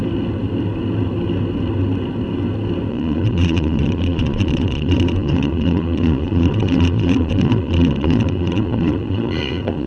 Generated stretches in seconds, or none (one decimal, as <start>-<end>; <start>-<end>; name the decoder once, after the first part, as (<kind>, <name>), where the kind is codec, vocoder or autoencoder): 2.9-9.9 (vocoder, Vocos)